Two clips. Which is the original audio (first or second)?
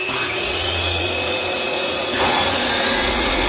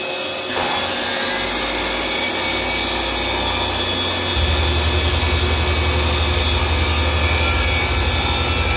second